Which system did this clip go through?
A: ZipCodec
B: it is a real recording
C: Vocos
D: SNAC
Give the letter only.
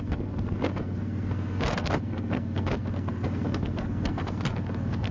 D